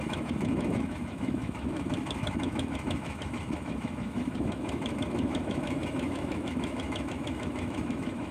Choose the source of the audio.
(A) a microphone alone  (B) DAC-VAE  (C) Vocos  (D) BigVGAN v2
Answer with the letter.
B